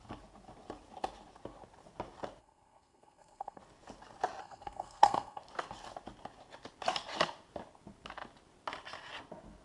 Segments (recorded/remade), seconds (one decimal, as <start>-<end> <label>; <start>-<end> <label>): 0.0-2.4 recorded; 2.4-3.6 remade; 3.6-4.4 recorded; 4.4-5.4 remade; 5.4-9.6 recorded